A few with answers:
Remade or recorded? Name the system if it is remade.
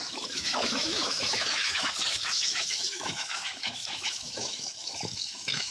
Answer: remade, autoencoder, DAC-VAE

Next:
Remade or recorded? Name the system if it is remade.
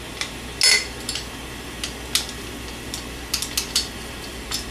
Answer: recorded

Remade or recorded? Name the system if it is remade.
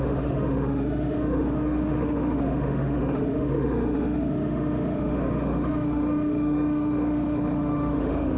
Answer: remade, autoencoder, DAC-VAE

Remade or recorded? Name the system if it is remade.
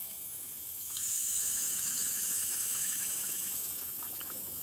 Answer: remade, autoencoder, DAC-VAE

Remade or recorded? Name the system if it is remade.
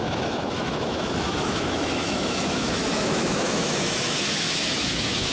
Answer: remade, autoencoder, DAC-VAE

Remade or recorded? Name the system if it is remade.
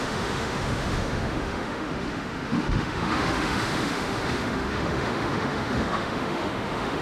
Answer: remade, autoencoder, DAC-VAE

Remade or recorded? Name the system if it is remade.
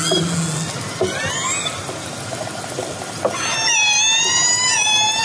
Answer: recorded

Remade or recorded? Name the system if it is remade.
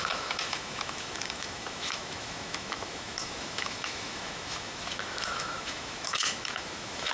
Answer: remade, autoencoder, DAC-VAE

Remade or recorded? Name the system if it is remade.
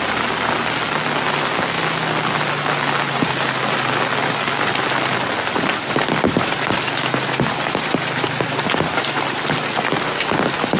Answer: recorded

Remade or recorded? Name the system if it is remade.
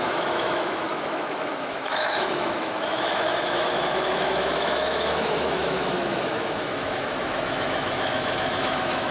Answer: remade, autoencoder, DAC-VAE